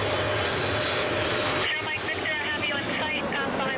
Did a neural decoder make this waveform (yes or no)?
no